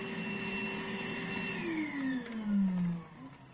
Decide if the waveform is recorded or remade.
recorded